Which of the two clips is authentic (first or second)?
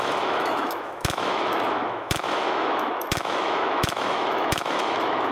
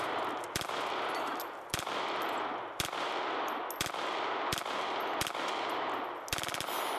second